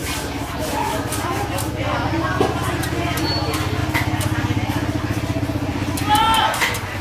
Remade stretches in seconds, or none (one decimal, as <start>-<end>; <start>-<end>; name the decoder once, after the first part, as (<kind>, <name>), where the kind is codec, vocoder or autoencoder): none